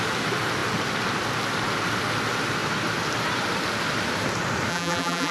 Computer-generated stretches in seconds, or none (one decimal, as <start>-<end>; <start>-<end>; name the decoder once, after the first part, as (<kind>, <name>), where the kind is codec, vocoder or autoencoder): 4.7-5.3 (vocoder, BigVGAN v2)